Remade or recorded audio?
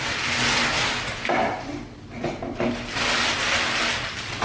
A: recorded